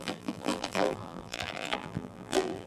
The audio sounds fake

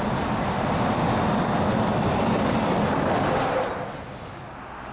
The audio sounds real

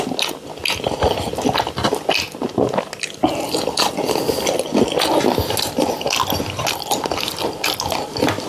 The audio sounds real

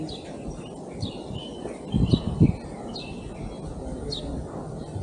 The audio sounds real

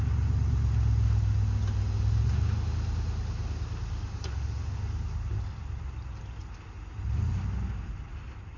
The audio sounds real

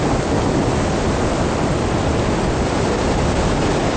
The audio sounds real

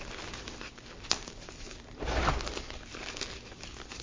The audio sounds real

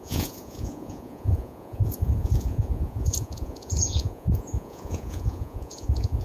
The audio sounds fake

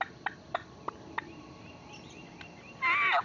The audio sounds real